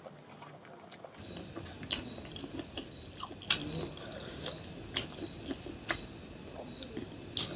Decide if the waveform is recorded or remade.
recorded